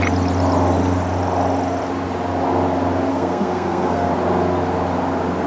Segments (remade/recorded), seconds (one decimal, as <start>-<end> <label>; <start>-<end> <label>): 0.0-3.1 recorded; 3.1-4.1 remade; 4.1-5.5 recorded